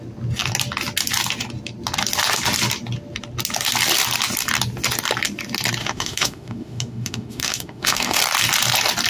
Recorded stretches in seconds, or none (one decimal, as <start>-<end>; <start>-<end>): 0.0-5.8; 8.2-9.1